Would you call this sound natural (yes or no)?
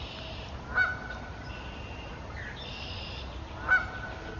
yes